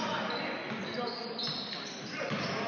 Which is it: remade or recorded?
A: recorded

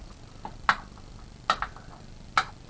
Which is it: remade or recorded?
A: recorded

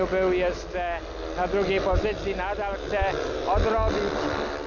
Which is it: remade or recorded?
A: recorded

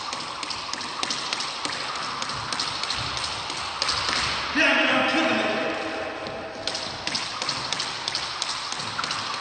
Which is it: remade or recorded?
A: recorded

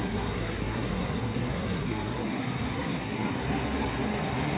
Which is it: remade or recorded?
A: remade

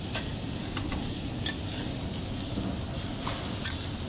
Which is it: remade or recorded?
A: recorded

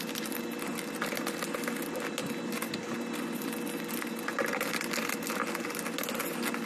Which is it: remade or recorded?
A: recorded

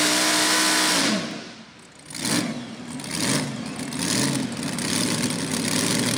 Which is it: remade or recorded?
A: recorded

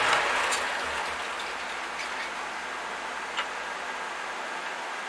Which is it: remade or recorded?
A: recorded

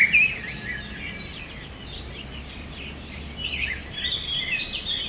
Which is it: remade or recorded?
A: recorded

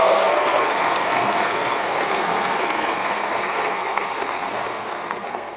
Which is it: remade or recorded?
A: remade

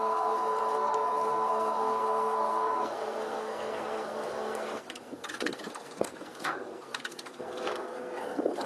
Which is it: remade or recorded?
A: remade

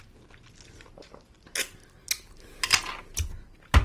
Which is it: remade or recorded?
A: recorded